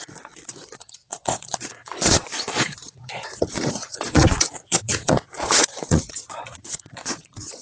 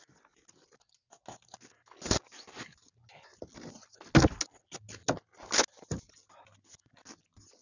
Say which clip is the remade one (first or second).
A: first